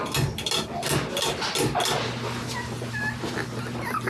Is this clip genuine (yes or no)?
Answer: yes